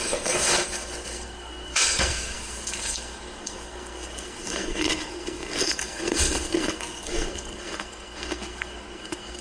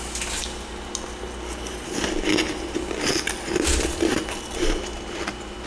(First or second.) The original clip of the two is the second